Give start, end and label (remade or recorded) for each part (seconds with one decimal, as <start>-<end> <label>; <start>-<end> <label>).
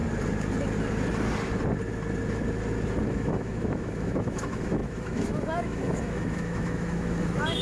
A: 0.0-3.0 recorded; 3.0-7.6 remade